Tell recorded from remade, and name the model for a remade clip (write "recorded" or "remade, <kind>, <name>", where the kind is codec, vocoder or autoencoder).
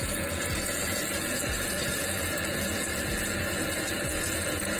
remade, vocoder, Vocos